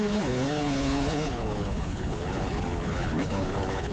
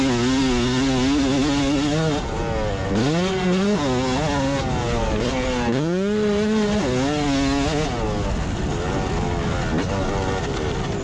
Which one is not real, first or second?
first